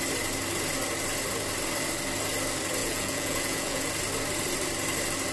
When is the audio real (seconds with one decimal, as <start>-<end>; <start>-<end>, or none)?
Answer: 0.0-2.8; 3.8-5.3